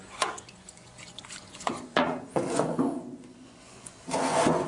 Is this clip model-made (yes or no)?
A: yes